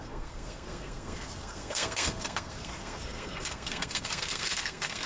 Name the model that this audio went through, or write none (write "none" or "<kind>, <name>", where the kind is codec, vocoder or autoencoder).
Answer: codec, SNAC